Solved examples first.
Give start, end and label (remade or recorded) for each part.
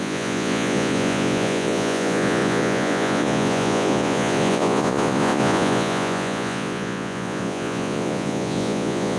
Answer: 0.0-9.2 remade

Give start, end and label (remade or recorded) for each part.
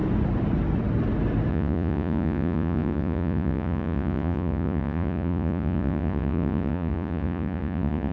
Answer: 0.0-1.5 recorded; 1.5-8.1 remade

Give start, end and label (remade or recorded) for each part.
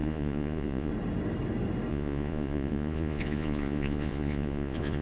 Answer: 0.0-0.9 remade; 0.9-1.9 recorded; 1.9-5.0 remade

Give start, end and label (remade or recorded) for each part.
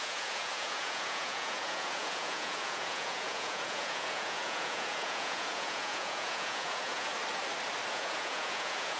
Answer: 0.0-7.1 remade; 7.1-7.9 recorded; 7.9-9.0 remade